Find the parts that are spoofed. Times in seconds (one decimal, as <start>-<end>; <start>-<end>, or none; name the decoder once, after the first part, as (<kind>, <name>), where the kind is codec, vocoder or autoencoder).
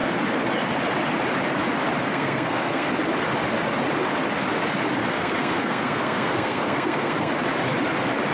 2.1-2.9 (codec, SNAC); 5.0-7.3